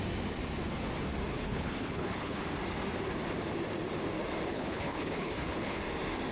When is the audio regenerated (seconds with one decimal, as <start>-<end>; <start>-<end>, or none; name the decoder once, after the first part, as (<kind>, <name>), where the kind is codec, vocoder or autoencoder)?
1.3-2.4 (codec, HILCodec); 4.5-5.8